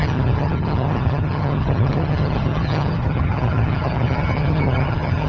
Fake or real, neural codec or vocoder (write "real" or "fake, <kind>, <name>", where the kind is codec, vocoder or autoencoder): fake, vocoder, HiFi-GAN